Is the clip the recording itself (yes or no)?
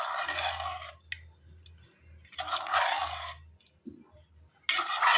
yes